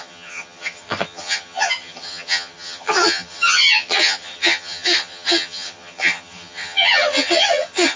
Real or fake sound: fake